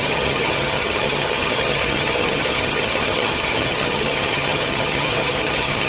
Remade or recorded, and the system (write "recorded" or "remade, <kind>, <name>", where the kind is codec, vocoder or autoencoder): remade, vocoder, HiFi-GAN